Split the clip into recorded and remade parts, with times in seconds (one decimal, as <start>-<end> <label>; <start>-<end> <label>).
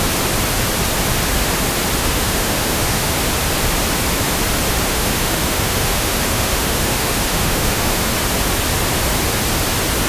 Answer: 0.0-2.0 recorded; 2.0-3.1 remade; 3.1-4.9 recorded; 4.9-8.0 remade; 8.0-10.1 recorded